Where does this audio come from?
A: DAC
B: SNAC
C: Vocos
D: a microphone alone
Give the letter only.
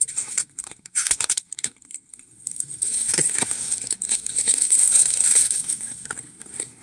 B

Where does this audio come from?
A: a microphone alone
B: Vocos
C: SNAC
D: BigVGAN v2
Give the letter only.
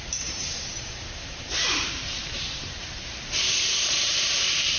D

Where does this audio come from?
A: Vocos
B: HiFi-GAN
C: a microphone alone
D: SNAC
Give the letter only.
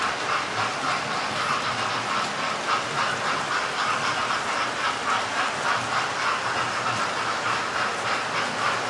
C